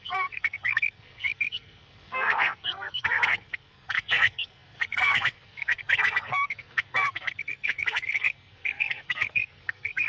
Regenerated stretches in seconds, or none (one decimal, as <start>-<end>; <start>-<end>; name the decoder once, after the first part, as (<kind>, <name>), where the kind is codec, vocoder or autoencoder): 0.0-10.1 (codec, SNAC)